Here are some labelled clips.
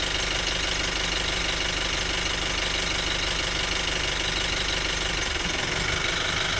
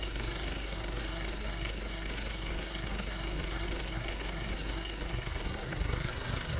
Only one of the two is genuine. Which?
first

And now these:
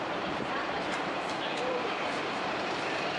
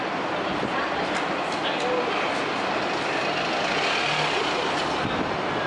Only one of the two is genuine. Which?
second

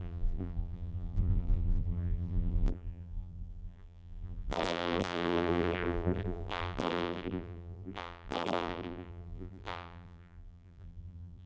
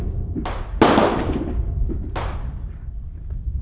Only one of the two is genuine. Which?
second